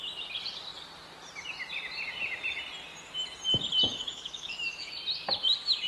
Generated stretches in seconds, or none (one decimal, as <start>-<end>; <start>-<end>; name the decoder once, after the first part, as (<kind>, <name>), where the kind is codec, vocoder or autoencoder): 3.9-4.9 (autoencoder, DAC-VAE)